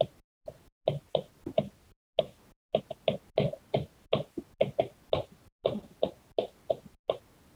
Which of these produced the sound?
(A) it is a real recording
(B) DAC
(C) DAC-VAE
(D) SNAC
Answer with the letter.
A